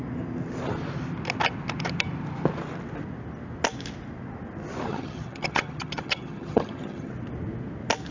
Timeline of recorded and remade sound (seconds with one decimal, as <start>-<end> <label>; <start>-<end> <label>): 0.0-4.9 recorded; 4.9-7.1 remade; 7.1-8.1 recorded